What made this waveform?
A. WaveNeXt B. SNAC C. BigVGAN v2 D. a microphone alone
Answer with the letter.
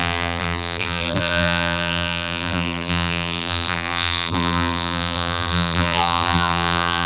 C